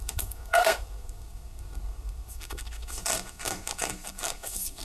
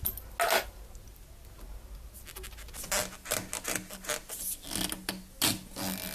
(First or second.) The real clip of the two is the second